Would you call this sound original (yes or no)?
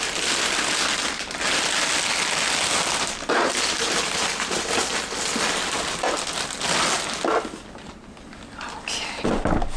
yes